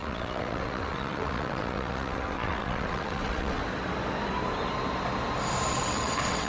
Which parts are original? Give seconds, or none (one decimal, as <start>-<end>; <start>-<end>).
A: 3.6-5.7